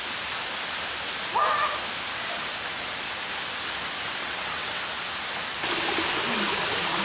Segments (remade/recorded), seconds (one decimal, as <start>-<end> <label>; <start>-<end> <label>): 0.0-4.2 recorded; 4.2-4.8 remade; 4.8-7.0 recorded